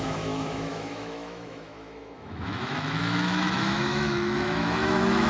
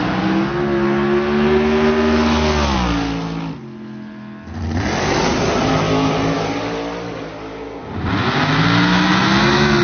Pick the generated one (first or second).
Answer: first